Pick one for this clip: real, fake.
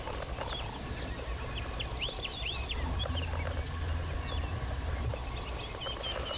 real